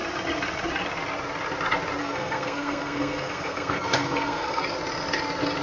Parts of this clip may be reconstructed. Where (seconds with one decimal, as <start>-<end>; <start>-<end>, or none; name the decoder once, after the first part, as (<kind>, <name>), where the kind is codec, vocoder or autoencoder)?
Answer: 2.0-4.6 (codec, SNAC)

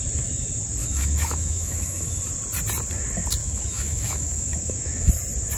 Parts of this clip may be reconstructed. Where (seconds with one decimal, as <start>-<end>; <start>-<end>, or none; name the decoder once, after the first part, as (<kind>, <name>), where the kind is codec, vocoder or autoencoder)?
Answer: 0.8-2.2 (autoencoder, DAC-VAE); 3.4-5.1

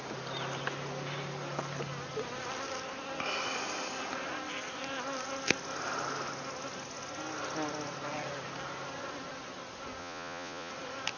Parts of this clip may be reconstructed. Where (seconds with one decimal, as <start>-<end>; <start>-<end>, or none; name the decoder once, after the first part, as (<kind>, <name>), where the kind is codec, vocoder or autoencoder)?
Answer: 10.0-10.7 (vocoder, Vocos)

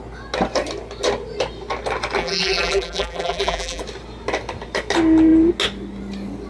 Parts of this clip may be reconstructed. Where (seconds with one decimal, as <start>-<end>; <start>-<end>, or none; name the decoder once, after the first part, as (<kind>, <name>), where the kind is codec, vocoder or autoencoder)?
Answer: 2.2-3.8 (vocoder, BigVGAN v2)

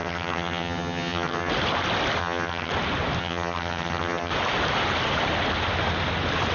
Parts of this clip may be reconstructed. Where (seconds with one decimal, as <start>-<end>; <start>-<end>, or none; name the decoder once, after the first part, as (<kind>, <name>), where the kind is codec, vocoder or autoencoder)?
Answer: 0.0-1.5 (vocoder, HiFi-GAN); 2.2-2.7; 3.2-4.3